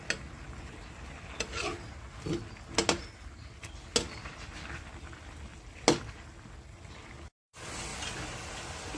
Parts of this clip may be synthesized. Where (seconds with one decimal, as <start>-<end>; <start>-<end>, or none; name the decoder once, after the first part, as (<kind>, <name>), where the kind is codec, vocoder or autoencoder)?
none